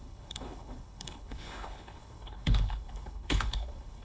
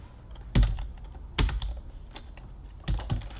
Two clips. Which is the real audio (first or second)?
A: second